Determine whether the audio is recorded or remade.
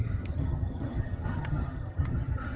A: remade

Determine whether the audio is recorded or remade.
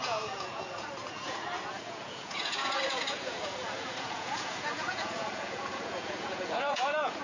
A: remade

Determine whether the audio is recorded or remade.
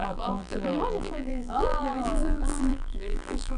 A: remade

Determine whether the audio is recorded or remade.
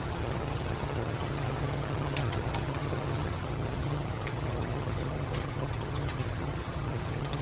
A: remade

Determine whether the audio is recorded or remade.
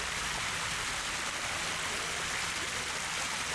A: recorded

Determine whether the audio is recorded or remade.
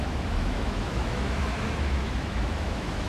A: remade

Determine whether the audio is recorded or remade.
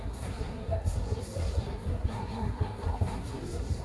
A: remade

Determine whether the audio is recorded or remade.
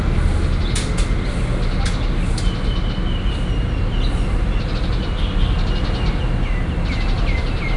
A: recorded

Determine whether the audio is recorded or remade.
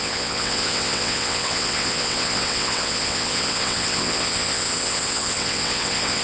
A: remade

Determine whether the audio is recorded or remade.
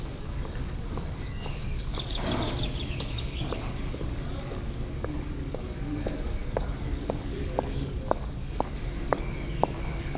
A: remade